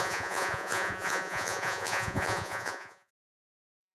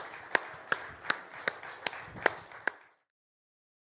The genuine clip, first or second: second